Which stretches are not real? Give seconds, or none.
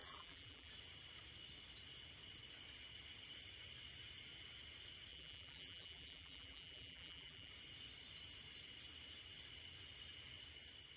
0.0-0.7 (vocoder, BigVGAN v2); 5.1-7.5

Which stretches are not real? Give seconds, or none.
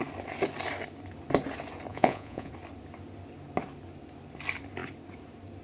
1.9-2.5 (vocoder, Vocos)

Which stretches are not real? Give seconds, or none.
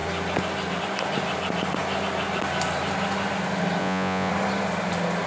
3.8-4.3 (vocoder, Vocos)